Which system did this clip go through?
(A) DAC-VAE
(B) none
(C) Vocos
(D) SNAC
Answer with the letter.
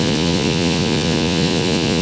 C